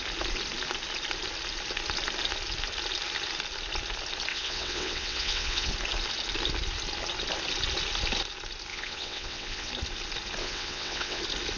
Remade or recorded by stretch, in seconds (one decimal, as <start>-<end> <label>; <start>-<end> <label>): 0.0-4.3 recorded; 4.3-5.7 remade; 5.7-8.7 recorded; 8.7-9.7 remade; 9.7-10.4 recorded; 10.4-11.2 remade; 11.2-11.6 recorded